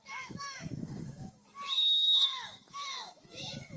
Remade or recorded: remade